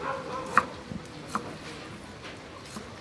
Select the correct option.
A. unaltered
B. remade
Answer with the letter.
A